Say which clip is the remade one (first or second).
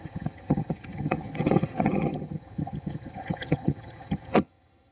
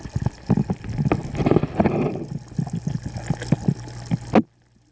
first